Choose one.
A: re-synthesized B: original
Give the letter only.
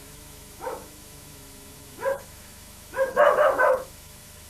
A